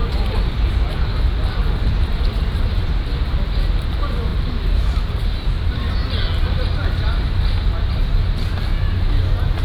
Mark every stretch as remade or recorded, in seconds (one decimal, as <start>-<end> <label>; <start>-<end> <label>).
0.0-4.3 recorded; 4.3-5.9 remade; 5.9-9.6 recorded